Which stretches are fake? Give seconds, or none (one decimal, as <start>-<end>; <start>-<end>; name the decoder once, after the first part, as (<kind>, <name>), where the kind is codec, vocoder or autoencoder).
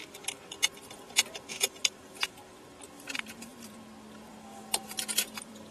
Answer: 0.0-3.5 (vocoder, BigVGAN v2); 4.1-5.7